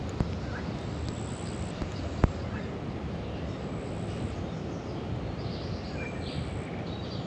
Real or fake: real